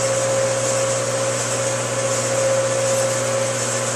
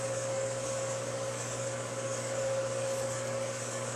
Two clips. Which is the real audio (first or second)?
first